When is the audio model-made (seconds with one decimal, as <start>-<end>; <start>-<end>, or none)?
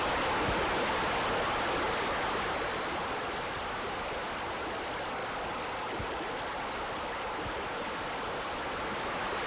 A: none